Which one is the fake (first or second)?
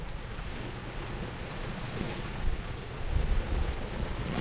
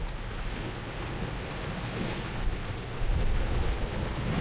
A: first